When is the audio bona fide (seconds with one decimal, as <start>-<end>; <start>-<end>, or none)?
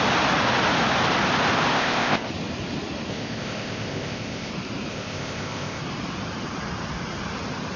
0.0-1.7; 2.3-3.1; 4.5-4.9; 5.8-7.8